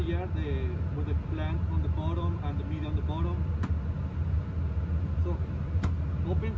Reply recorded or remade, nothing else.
recorded